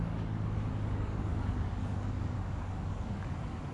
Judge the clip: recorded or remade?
remade